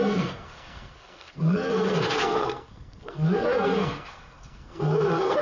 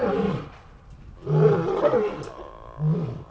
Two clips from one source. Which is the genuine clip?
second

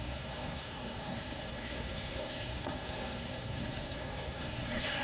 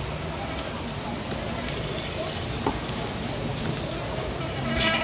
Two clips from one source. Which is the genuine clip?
second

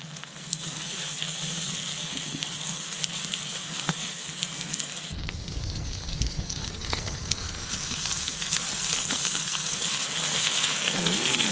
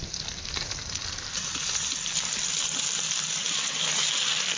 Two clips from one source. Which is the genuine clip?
second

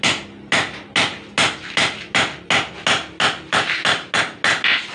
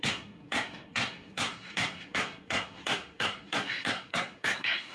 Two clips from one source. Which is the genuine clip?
first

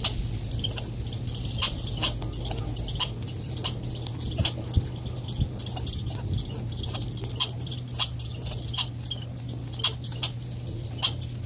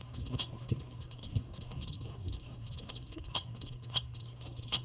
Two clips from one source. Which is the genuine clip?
first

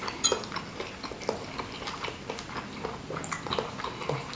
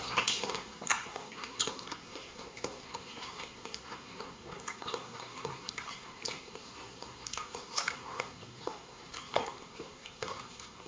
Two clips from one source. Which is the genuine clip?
first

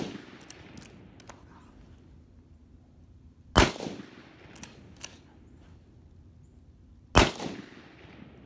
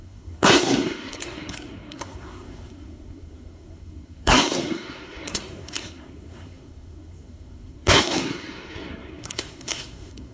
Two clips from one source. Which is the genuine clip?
first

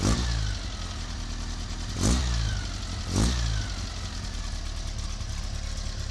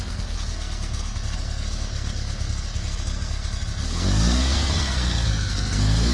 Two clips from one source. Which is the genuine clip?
first